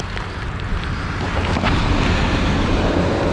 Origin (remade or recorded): recorded